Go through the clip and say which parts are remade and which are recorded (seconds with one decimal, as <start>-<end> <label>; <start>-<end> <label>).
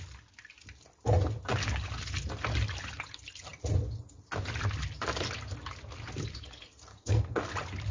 0.0-6.9 recorded; 6.9-7.4 remade; 7.4-7.9 recorded